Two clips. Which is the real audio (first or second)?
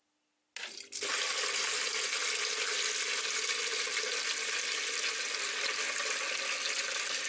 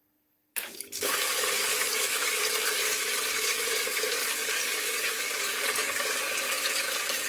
first